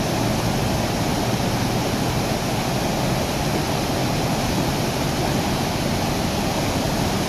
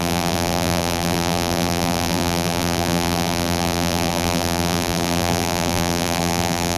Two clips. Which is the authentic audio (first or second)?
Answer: first